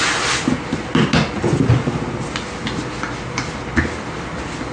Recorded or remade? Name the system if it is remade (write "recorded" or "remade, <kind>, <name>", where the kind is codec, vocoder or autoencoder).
recorded